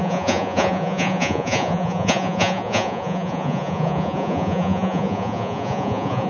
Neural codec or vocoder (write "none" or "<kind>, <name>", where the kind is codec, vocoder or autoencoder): vocoder, Vocos